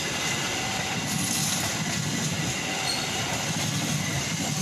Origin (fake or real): real